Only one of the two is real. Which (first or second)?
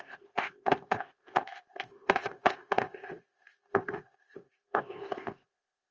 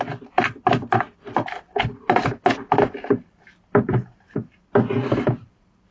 second